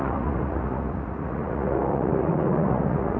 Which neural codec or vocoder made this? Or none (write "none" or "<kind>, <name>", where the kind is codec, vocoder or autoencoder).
vocoder, Vocos